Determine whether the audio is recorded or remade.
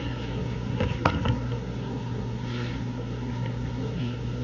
remade